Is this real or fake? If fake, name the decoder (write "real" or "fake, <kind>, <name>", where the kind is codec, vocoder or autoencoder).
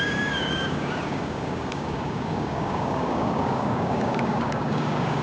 fake, codec, DAC